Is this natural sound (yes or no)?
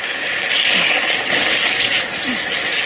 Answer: yes